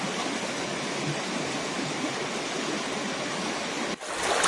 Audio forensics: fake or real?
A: real